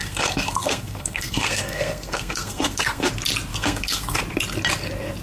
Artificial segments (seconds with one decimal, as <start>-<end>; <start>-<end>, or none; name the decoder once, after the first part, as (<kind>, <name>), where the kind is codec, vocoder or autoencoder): 0.0-3.1 (codec, SNAC); 3.5-4.2